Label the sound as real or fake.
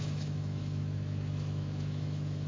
fake